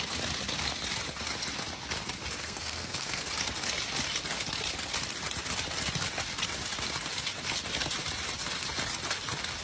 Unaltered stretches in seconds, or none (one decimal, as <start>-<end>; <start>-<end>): 0.0-2.4; 3.3-9.6